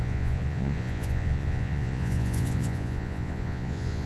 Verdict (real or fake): fake